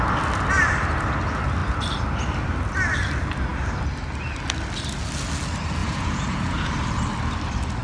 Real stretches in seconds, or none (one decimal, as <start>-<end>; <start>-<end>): 0.0-5.8; 6.7-7.8